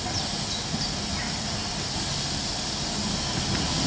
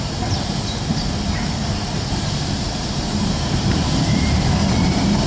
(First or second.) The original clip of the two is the first